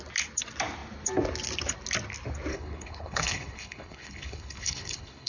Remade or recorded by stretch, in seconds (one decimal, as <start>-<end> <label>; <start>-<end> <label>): 0.0-2.5 recorded; 2.5-5.3 remade